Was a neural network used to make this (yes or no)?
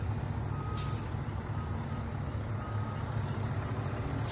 no